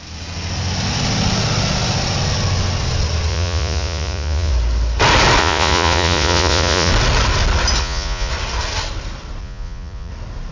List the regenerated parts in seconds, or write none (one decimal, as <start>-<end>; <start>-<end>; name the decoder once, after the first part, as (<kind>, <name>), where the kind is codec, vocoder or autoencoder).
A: 3.3-4.5 (vocoder, Vocos); 5.4-6.9; 7.8-8.3; 9.4-10.1